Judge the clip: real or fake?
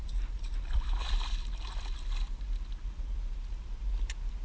real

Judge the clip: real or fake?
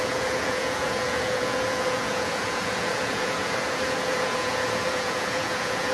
fake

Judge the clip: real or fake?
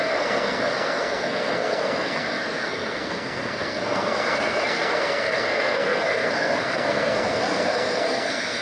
fake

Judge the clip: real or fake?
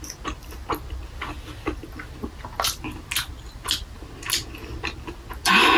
real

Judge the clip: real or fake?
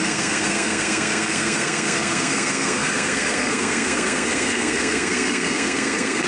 fake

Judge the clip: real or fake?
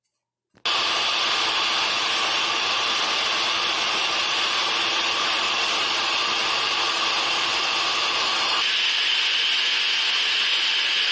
real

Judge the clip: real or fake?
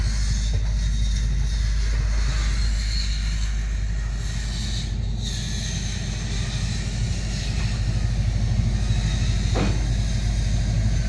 real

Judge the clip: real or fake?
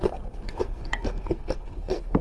fake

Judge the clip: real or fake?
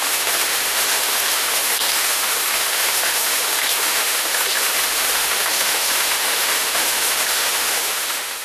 fake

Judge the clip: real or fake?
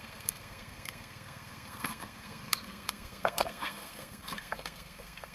fake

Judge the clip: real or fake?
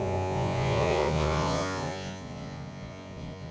fake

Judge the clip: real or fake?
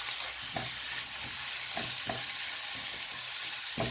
real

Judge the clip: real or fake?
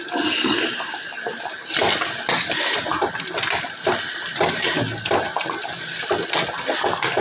real